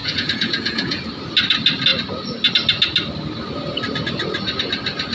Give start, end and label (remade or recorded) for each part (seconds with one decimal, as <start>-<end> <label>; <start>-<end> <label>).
0.0-1.1 remade; 1.1-5.1 recorded